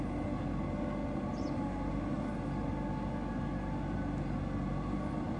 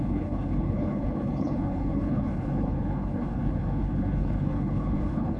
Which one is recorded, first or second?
first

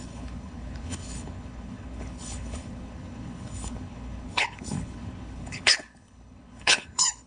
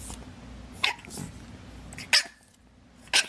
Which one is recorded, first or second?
second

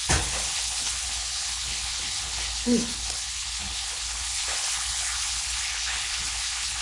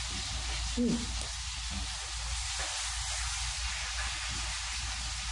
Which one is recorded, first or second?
second